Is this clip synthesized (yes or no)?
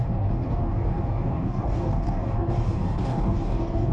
yes